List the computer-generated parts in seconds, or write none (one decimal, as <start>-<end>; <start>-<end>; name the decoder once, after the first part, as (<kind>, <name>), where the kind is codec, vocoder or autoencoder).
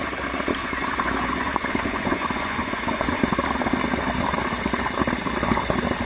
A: 0.6-3.2 (vocoder, Vocos)